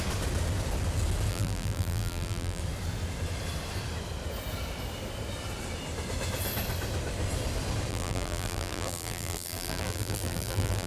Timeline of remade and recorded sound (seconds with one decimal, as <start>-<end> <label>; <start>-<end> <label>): 0.0-1.3 recorded; 1.3-2.6 remade; 2.6-7.9 recorded; 7.9-10.9 remade